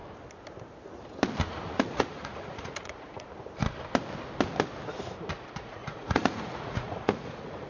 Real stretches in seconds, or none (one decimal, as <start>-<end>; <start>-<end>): 0.0-1.5; 3.3-5.6